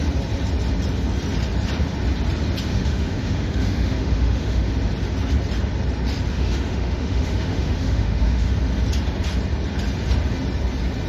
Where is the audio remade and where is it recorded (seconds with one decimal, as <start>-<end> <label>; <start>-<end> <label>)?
0.0-2.7 recorded; 2.7-4.7 remade; 4.7-6.3 recorded; 6.3-8.5 remade; 8.5-11.1 recorded